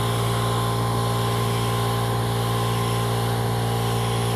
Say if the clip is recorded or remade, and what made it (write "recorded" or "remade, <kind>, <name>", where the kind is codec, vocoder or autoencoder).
recorded